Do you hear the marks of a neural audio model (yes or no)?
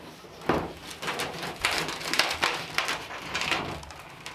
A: no